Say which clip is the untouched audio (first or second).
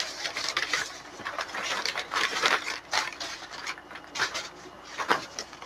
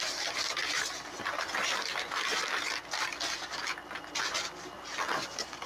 second